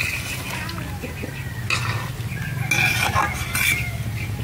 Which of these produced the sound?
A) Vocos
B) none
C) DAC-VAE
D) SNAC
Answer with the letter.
B